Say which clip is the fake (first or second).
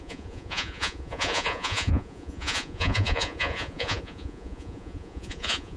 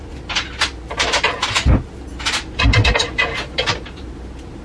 first